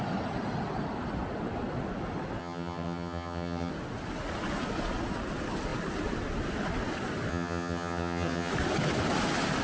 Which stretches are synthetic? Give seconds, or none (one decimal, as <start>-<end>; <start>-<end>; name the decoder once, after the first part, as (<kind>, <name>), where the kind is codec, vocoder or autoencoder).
2.4-3.7 (vocoder, HiFi-GAN); 7.3-8.5